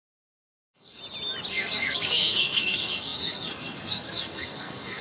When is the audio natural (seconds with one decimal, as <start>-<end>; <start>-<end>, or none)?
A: 1.0-1.5

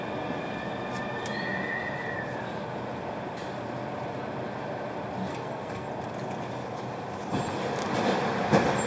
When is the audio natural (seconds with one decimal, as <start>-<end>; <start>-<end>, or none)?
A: 0.0-5.3; 5.9-8.9

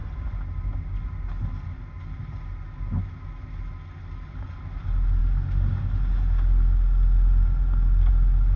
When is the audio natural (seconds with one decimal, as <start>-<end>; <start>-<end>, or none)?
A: 0.0-8.6

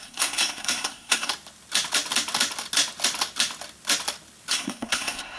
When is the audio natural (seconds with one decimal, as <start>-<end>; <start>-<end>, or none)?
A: 1.3-4.5

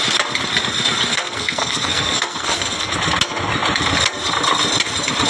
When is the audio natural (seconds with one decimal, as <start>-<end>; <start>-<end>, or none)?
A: 0.0-1.1; 2.9-5.3

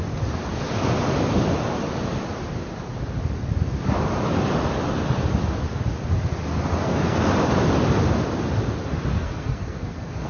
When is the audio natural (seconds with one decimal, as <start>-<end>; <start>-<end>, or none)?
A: 0.0-6.8; 7.3-9.1